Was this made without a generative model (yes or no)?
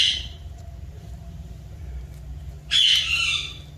yes